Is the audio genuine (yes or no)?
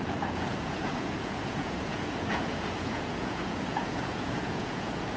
no